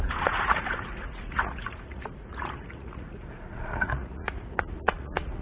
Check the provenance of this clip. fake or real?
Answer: fake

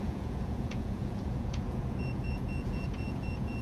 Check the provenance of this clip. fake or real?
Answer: fake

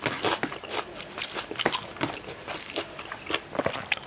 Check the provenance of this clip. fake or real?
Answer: real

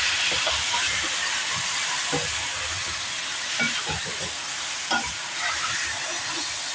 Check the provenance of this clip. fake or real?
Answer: real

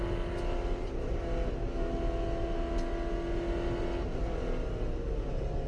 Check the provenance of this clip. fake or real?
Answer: real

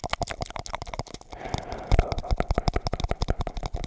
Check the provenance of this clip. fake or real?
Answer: real